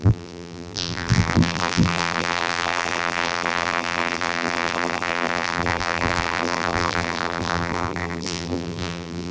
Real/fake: fake